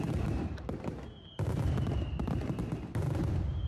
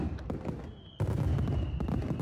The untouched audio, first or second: second